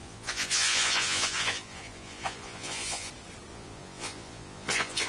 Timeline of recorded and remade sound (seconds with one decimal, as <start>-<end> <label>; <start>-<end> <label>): 0.0-3.1 remade; 3.1-3.5 recorded; 3.5-5.1 remade